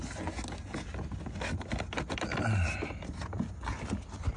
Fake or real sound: real